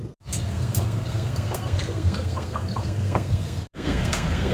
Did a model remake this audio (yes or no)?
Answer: yes